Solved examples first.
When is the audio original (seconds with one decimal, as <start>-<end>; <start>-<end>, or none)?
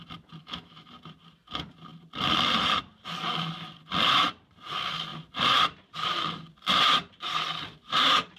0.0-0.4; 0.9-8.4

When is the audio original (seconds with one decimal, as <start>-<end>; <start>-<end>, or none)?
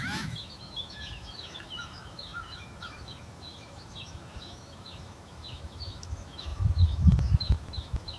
none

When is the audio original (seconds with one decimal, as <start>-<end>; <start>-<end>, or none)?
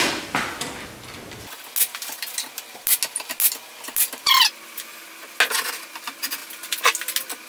0.0-7.5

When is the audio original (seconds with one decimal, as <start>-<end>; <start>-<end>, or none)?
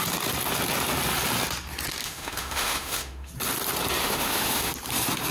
0.0-2.0; 3.3-4.0; 4.7-5.3